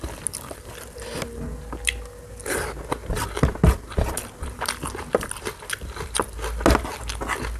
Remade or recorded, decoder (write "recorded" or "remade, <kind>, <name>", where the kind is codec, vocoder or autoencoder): recorded